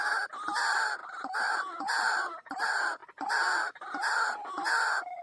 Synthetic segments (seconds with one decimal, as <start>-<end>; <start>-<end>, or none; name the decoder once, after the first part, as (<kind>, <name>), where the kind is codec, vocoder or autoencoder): 0.0-3.0 (vocoder, BigVGAN v2); 4.7-5.2

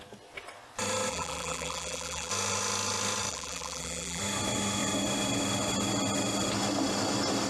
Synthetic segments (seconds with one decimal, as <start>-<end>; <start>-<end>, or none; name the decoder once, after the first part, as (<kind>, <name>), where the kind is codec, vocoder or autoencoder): 1.1-2.3 (vocoder, BigVGAN v2); 3.3-4.2